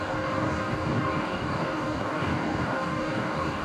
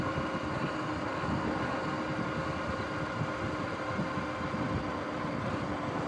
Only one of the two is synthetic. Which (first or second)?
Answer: first